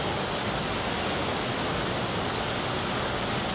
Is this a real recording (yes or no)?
yes